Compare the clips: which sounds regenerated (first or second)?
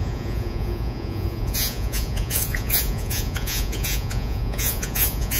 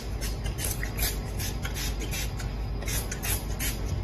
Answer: first